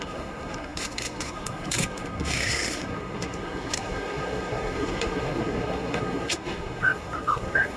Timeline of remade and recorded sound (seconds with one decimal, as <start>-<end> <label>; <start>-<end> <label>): 0.0-7.8 remade